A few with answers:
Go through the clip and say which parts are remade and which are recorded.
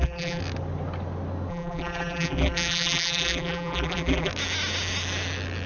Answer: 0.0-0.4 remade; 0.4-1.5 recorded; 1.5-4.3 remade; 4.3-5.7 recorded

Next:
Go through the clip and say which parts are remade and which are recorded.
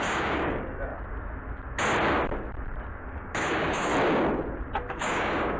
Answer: 0.0-0.9 remade; 0.9-3.0 recorded; 3.0-3.9 remade; 3.9-4.9 recorded; 4.9-5.6 remade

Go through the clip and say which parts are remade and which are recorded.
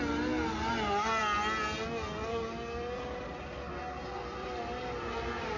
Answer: 0.0-5.6 recorded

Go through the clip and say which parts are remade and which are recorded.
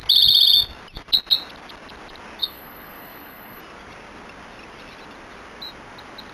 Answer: 0.0-2.4 recorded; 2.4-3.6 remade; 3.6-6.3 recorded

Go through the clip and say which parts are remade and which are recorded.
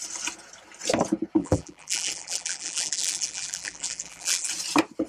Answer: 0.0-1.4 recorded; 1.4-4.5 remade; 4.5-5.1 recorded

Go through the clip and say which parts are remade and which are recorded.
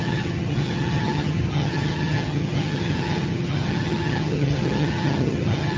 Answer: 0.0-5.8 remade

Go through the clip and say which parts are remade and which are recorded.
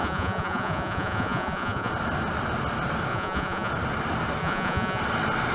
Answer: 0.0-1.9 remade; 1.9-3.1 recorded; 3.1-3.7 remade; 3.7-4.4 recorded; 4.4-5.0 remade; 5.0-5.5 recorded